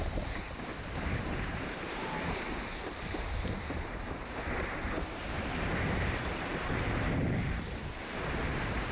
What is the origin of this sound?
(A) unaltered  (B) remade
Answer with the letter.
B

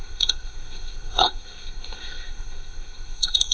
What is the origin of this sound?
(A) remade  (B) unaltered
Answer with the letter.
A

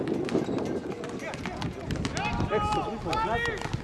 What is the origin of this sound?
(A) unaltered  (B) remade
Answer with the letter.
A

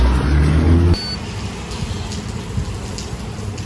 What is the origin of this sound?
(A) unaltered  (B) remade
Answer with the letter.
A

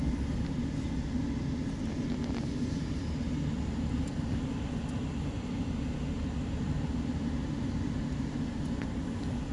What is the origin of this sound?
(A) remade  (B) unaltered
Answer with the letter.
B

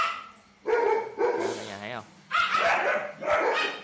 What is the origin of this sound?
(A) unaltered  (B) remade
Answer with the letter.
A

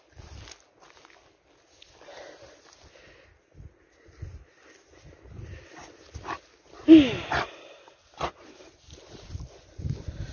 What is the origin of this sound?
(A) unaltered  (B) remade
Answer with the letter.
A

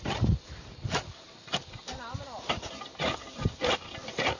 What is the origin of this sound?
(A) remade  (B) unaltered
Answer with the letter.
B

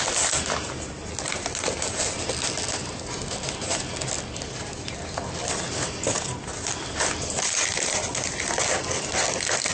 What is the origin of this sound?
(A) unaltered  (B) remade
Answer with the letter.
A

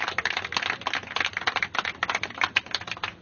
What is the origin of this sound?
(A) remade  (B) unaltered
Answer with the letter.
B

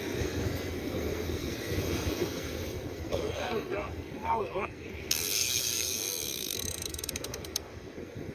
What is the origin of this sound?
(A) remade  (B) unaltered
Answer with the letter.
A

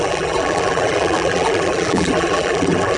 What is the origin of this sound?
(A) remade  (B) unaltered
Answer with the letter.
A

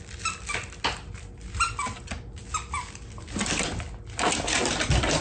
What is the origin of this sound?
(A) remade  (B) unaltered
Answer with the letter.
B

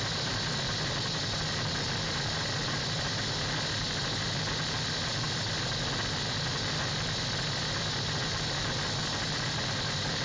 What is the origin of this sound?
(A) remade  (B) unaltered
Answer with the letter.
B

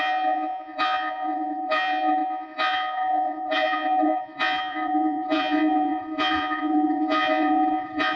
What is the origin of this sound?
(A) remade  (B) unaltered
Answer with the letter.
A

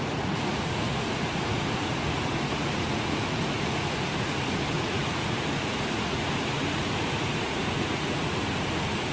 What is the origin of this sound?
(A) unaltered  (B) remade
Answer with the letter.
B